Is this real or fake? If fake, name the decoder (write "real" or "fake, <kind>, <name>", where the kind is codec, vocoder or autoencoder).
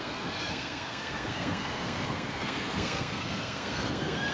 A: fake, codec, SNAC